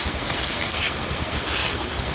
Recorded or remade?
remade